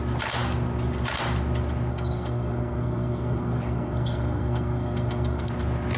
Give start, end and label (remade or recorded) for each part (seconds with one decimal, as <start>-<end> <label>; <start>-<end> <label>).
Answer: 0.0-1.9 recorded; 1.9-5.5 remade; 5.5-6.0 recorded